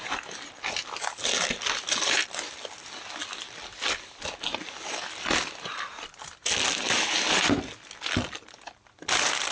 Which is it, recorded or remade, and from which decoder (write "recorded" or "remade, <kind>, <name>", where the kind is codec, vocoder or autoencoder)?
recorded